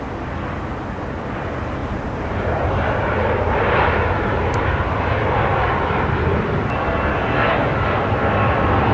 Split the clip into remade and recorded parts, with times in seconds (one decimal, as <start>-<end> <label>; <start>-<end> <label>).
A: 0.0-7.1 recorded; 7.1-7.9 remade; 7.9-8.9 recorded